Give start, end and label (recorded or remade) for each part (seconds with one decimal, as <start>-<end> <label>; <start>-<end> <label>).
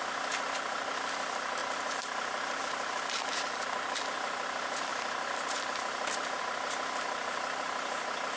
0.0-8.4 recorded